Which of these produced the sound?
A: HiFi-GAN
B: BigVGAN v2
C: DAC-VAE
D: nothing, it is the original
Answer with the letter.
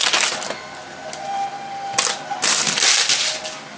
D